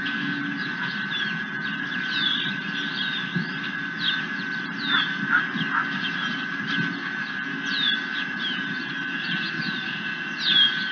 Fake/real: real